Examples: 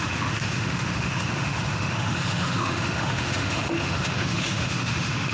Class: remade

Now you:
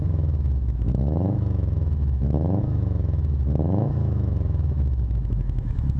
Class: remade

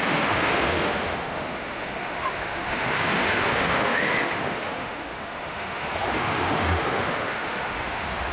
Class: remade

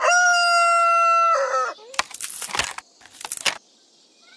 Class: recorded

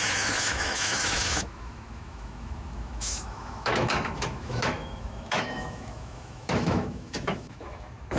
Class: remade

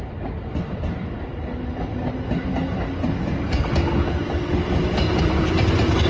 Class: recorded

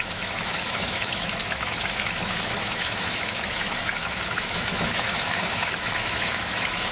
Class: remade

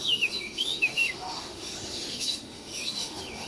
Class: remade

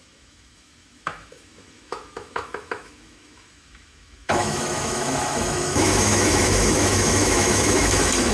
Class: remade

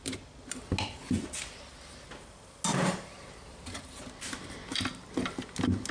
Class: recorded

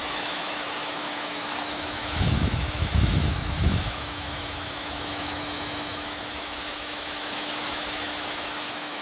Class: remade